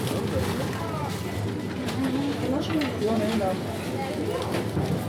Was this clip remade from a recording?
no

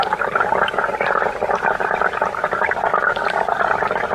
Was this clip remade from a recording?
no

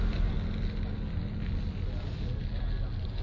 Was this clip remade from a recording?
no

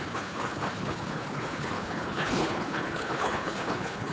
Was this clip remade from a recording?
yes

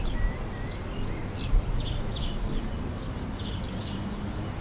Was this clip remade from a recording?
no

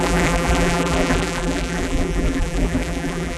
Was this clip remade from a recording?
yes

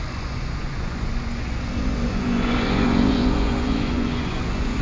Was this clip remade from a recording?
yes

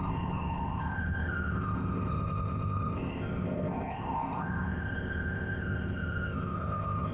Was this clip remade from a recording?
yes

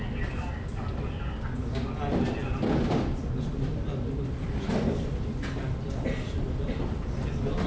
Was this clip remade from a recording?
no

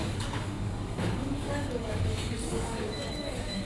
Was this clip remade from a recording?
yes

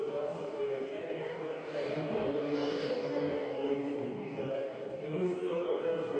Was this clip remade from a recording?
yes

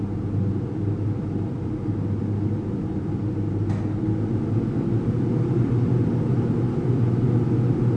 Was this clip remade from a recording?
no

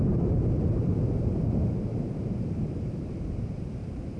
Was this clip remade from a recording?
no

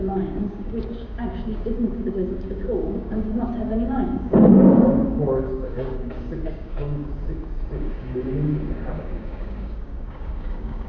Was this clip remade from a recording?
yes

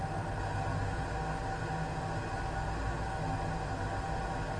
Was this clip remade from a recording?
no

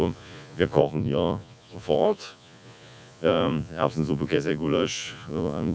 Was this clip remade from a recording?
yes